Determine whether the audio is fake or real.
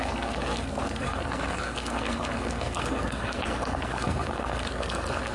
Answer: fake